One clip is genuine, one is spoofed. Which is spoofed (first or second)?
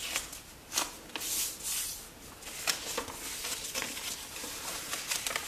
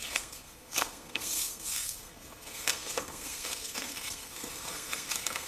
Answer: second